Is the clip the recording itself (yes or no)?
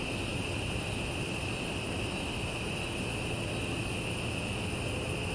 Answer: yes